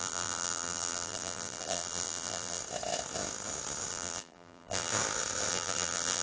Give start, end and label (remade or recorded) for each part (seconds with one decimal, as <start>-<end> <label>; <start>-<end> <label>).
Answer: 0.0-2.6 remade; 2.6-3.9 recorded; 3.9-4.9 remade; 4.9-5.5 recorded; 5.5-6.2 remade